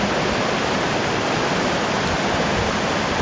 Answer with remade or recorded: recorded